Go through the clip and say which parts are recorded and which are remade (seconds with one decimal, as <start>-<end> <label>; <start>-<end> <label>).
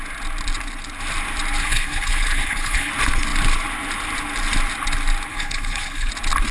0.0-1.6 recorded; 1.6-2.9 remade; 2.9-5.3 recorded; 5.3-6.1 remade; 6.1-6.5 recorded